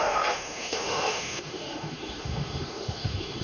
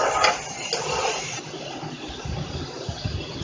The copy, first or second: first